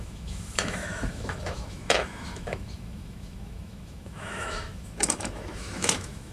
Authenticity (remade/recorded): remade